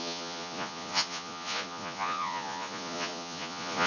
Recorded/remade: remade